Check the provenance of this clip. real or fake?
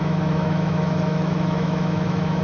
fake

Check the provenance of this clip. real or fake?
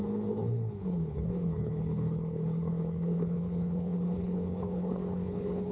fake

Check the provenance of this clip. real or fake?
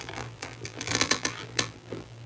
fake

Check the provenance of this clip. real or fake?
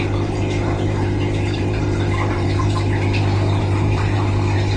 fake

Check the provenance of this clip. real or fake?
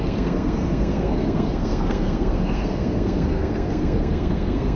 fake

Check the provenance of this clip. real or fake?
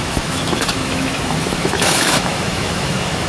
fake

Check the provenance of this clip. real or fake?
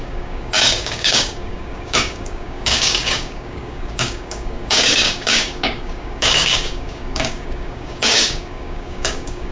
fake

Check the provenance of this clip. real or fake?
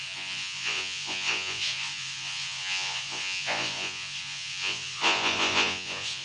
fake